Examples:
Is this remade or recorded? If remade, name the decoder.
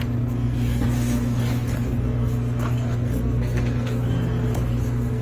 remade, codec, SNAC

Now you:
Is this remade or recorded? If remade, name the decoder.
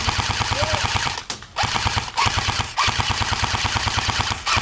remade, vocoder, BigVGAN v2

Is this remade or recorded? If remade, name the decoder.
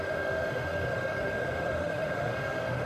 remade, autoencoder, DAC-VAE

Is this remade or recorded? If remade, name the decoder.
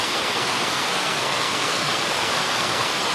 remade, codec, SNAC